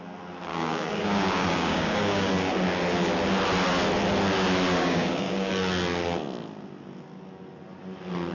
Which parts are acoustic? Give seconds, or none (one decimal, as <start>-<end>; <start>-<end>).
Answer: 0.0-0.5; 2.3-4.8; 5.5-8.3